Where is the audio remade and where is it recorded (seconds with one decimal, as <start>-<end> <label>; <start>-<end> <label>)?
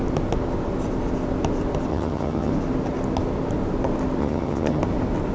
0.0-1.9 recorded; 1.9-2.5 remade; 2.5-4.2 recorded; 4.2-4.8 remade; 4.8-5.3 recorded